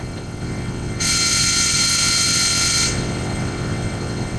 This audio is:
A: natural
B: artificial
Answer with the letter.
B